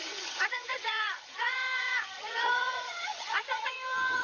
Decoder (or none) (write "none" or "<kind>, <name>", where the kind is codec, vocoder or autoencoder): vocoder, HiFi-GAN